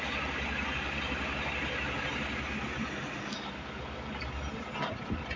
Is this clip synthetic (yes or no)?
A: no